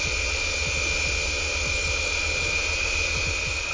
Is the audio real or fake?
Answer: real